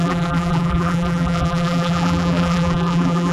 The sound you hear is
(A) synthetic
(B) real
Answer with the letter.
A